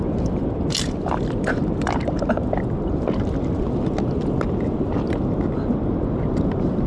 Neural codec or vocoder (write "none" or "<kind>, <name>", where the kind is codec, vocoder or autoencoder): none